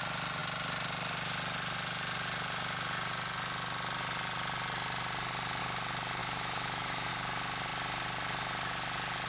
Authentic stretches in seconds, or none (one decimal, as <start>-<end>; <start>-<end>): 0.0-6.2; 7.1-9.3